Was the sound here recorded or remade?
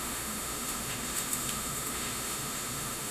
remade